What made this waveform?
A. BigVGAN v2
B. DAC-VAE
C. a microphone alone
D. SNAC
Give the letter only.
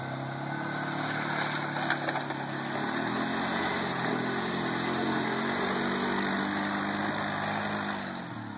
C